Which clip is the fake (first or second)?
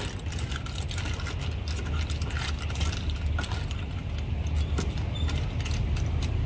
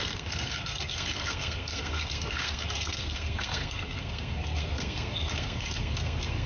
second